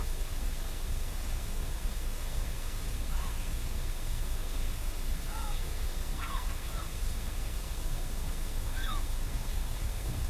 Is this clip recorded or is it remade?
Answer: remade